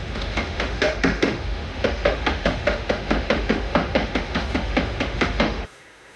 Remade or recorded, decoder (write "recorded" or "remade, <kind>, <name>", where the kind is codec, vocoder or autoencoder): remade, autoencoder, DAC-VAE